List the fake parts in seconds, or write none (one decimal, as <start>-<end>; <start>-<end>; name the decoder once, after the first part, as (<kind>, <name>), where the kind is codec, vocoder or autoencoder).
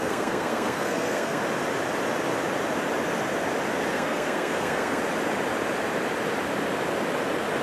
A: 0.0-1.4 (codec, SNAC); 3.9-5.0